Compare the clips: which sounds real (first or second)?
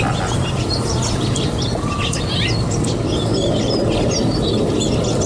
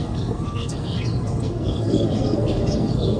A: first